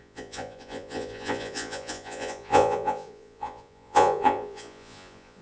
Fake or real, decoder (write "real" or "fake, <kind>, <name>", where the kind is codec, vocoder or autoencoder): fake, vocoder, Vocos